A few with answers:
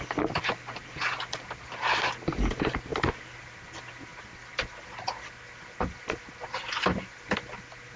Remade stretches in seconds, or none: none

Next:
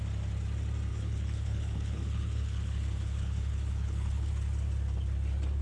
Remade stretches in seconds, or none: 0.9-4.3 (codec, HILCodec)

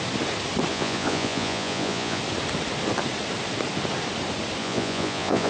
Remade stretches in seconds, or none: 0.7-2.2 (vocoder, Vocos); 4.6-5.5

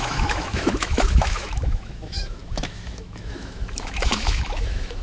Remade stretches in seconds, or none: 0.0-5.0 (autoencoder, DAC-VAE)

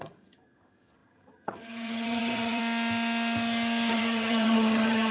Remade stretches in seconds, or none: 0.0-2.6 (vocoder, HiFi-GAN); 3.9-5.1